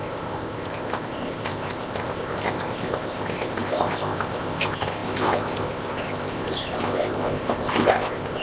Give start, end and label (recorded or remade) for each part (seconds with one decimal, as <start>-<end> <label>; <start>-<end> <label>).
0.0-8.4 remade